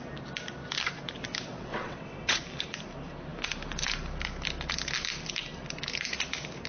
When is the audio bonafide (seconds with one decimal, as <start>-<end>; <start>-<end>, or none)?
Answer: 0.0-1.5; 2.4-6.7